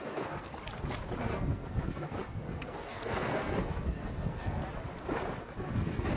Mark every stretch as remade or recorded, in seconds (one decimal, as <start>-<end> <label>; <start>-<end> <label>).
0.0-0.5 remade; 0.5-1.2 recorded; 1.2-4.6 remade; 4.6-5.4 recorded; 5.4-6.2 remade